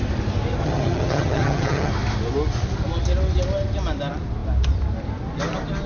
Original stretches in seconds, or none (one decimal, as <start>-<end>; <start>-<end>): 0.0-0.6; 1.9-5.9